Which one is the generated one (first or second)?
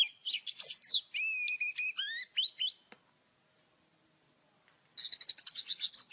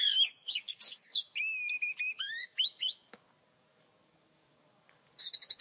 second